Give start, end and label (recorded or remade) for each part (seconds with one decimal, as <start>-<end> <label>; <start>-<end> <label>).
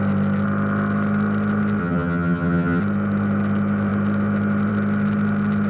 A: 0.0-1.8 recorded; 1.8-2.8 remade; 2.8-5.7 recorded